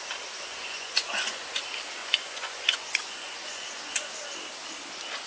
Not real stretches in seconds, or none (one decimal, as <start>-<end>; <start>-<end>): 0.5-1.6; 2.0-4.1